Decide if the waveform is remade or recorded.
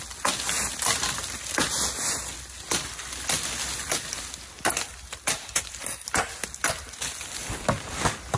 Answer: recorded